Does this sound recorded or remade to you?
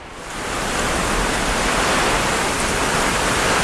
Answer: recorded